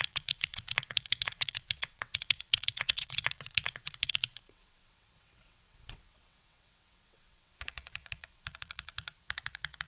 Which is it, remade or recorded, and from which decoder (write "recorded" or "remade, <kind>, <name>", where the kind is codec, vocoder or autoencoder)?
remade, vocoder, WaveNeXt